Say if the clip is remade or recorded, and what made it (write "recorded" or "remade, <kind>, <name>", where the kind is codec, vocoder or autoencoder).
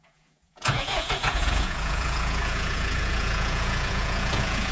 remade, vocoder, Vocos